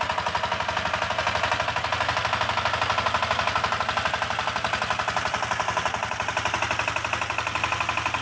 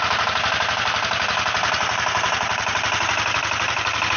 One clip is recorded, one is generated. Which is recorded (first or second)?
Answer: first